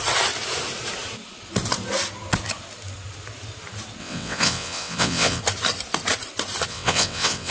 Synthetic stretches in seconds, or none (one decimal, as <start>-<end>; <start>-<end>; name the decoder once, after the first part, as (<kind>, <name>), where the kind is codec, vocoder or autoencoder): 4.0-5.4 (vocoder, WaveNeXt); 6.7-7.5